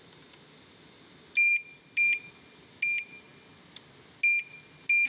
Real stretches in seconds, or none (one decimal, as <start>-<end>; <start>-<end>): 0.0-5.1

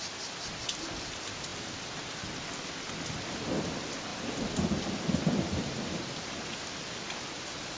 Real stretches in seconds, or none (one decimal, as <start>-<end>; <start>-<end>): 0.0-7.8

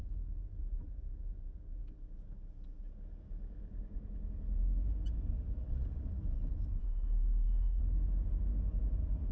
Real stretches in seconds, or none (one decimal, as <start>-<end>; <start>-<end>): 0.0-6.8; 7.8-9.3

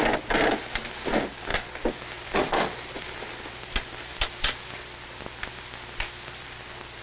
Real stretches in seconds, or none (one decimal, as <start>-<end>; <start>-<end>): 0.0-7.0

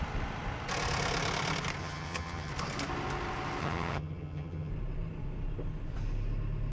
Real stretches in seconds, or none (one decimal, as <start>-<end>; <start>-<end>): 0.0-1.8; 2.5-3.6; 4.7-6.7

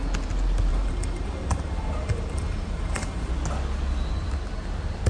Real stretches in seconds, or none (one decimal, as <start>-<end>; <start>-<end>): 0.0-0.7; 3.3-5.1

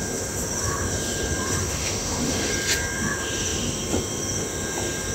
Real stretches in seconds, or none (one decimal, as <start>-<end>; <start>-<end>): 0.0-1.6; 2.5-5.1

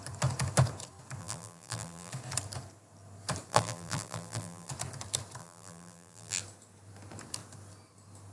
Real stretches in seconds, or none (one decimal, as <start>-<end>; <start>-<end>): 0.0-1.2; 2.1-3.5; 4.7-5.4; 6.4-8.3